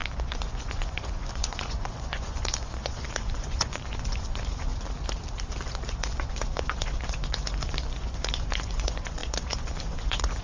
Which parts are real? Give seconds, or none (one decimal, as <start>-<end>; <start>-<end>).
4.7-5.5

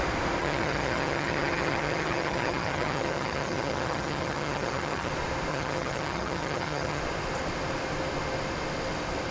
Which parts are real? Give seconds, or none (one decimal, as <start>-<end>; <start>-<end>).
0.0-0.4; 5.1-5.5; 7.0-9.3

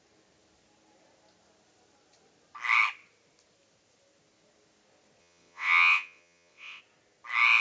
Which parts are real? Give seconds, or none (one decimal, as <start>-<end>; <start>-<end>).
0.0-5.2; 6.8-7.6

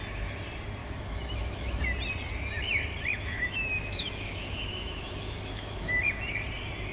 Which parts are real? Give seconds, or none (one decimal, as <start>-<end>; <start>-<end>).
0.0-0.8; 1.8-3.1; 6.0-6.9

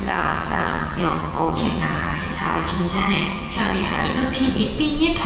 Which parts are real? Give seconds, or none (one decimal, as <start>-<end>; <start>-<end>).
4.6-5.3

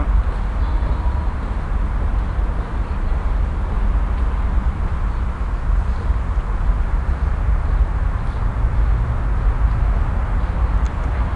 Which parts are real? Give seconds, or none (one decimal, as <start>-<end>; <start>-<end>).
0.0-11.4